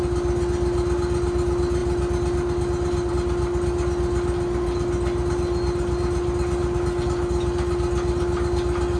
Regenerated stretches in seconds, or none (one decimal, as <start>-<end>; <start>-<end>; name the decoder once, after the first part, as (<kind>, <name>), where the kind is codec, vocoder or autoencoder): none